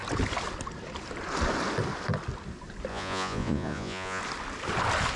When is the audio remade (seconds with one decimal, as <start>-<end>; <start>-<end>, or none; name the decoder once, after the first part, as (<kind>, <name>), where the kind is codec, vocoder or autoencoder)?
2.9-4.2 (vocoder, Vocos)